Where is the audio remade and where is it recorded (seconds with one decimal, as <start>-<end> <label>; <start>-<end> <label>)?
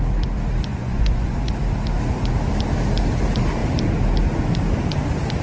0.0-0.7 recorded; 0.7-1.6 remade; 1.6-5.4 recorded